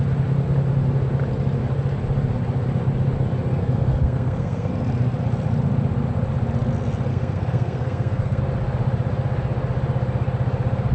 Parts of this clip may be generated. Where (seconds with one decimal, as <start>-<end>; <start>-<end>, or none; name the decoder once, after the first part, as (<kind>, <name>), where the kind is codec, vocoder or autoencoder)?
3.6-4.7 (codec, SNAC); 7.1-8.4